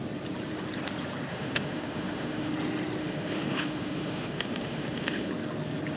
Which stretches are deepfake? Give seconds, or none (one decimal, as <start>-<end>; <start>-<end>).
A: 1.3-2.5; 3.0-5.3